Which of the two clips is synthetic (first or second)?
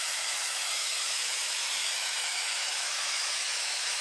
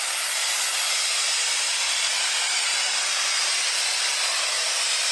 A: first